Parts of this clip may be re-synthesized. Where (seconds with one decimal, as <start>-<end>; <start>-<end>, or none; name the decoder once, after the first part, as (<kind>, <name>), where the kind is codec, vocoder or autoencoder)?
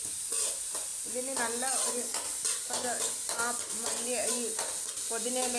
none